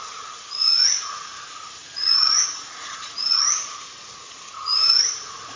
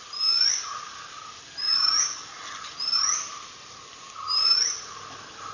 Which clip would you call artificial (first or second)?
first